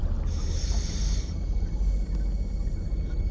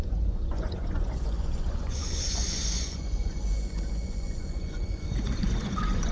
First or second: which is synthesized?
second